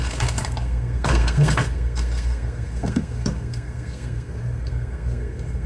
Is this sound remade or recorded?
remade